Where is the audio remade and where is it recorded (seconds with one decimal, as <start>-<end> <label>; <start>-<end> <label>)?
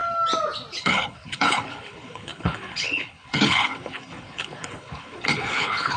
0.0-0.8 recorded; 0.8-6.0 remade